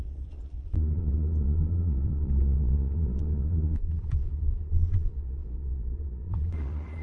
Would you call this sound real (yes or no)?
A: no